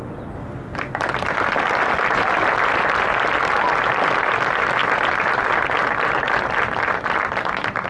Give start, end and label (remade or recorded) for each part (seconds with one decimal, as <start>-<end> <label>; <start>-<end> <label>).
0.0-7.9 recorded